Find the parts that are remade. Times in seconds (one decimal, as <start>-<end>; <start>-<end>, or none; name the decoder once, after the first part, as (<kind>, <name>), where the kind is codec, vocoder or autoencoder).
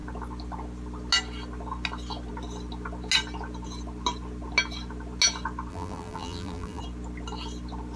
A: 5.7-6.8 (vocoder, BigVGAN v2)